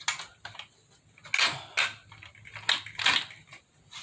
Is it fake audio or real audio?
real